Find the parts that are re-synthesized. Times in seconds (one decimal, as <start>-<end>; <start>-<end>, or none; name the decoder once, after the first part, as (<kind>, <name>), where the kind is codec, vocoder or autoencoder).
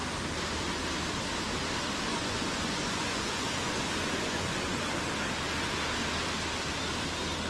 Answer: 2.1-5.0 (vocoder, Vocos)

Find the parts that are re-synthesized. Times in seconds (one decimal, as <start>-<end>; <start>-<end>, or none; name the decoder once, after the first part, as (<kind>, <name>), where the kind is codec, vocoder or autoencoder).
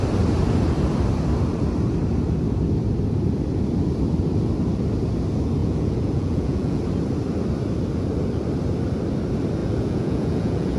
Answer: 5.6-6.8 (vocoder, Vocos); 9.6-10.8